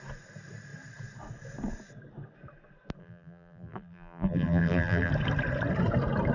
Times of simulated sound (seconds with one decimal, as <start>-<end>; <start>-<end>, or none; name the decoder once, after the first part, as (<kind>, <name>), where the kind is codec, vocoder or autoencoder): 3.0-5.1 (vocoder, BigVGAN v2)